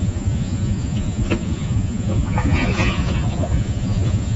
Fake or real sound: fake